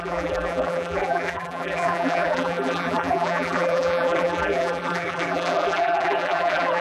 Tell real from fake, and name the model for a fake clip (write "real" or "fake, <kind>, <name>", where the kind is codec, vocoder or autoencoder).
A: fake, vocoder, BigVGAN v2